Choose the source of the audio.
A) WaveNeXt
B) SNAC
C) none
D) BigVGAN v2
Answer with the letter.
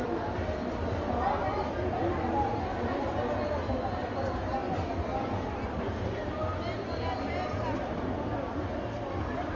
C